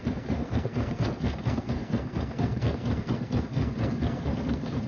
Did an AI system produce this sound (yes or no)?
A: yes